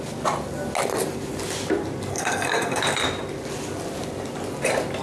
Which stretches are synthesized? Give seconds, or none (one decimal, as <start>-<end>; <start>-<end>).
2.1-2.8